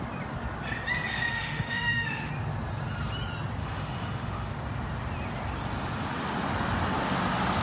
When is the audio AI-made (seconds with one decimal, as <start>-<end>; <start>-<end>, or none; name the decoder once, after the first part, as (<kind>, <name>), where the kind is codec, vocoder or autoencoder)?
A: 1.3-2.3 (autoencoder, DAC-VAE); 3.6-4.5